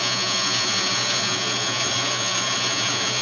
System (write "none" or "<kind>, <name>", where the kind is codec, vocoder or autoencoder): vocoder, Vocos